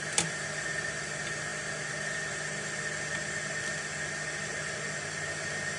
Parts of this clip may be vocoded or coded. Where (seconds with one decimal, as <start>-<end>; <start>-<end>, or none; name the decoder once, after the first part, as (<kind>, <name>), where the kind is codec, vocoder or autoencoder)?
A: none